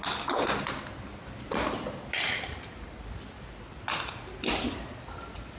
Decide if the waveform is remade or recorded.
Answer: recorded